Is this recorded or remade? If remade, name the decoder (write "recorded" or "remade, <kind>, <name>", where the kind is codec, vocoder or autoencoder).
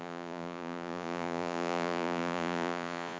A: remade, vocoder, Vocos